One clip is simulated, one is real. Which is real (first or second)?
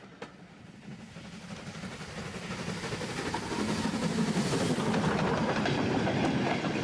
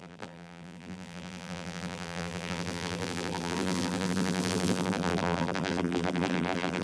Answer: first